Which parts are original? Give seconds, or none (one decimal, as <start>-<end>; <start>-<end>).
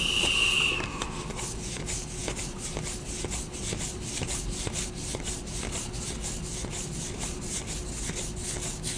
0.0-9.0